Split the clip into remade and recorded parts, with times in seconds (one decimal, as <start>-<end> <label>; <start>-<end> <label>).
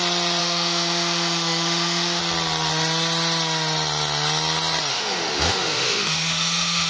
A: 0.0-0.4 recorded; 0.4-2.2 remade; 2.2-4.9 recorded; 4.9-6.9 remade